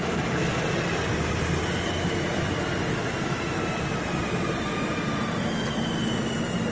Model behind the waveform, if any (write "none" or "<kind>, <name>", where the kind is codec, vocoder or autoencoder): none